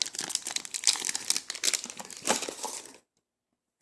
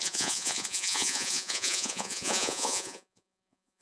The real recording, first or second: first